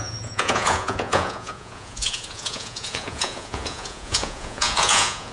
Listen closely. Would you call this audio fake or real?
fake